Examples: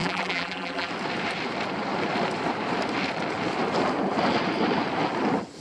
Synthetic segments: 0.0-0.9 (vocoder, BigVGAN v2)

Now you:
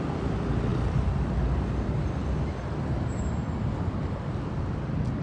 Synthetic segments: 0.7-1.3 (vocoder, BigVGAN v2)

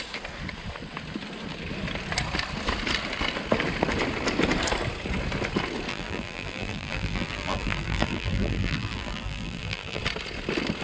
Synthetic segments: 5.9-10.0 (vocoder, BigVGAN v2)

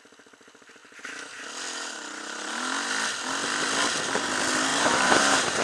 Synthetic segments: 4.7-5.6 (vocoder, BigVGAN v2)

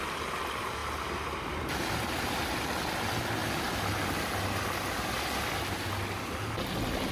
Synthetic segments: 3.4-4.2 (vocoder, BigVGAN v2)

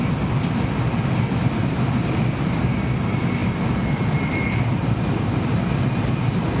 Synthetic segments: 3.4-5.5 (vocoder, BigVGAN v2)